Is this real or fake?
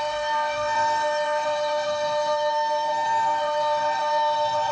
fake